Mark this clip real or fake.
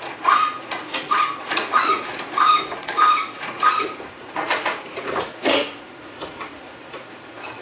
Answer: fake